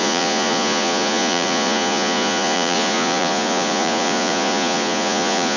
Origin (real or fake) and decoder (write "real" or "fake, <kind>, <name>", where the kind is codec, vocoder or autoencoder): fake, vocoder, Vocos